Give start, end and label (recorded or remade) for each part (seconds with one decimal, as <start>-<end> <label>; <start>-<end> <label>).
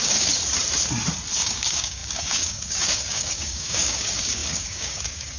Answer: 0.0-0.4 remade; 0.4-1.4 recorded; 1.4-5.4 remade